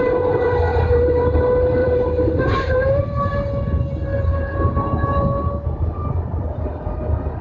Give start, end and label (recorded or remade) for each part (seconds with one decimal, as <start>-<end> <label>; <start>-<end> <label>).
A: 0.0-0.7 recorded; 0.7-1.4 remade; 1.4-1.8 recorded; 1.8-3.3 remade; 3.3-4.1 recorded; 4.1-7.0 remade; 7.0-7.4 recorded